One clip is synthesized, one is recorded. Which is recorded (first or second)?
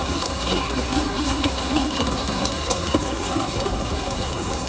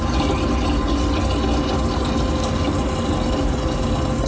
second